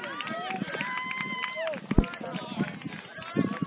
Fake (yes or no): no